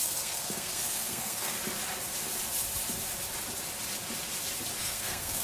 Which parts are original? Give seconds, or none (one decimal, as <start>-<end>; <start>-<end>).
1.6-4.8